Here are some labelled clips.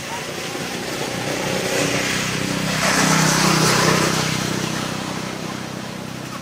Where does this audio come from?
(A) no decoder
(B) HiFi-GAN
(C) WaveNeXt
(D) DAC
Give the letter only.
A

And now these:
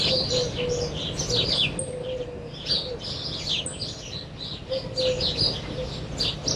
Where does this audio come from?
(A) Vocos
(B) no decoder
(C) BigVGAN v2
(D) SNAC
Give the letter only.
B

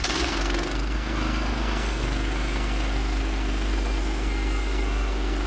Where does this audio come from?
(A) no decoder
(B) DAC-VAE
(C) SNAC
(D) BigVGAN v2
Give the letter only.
C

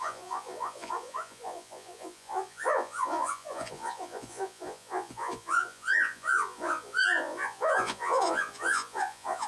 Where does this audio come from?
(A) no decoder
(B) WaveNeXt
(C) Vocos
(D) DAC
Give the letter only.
C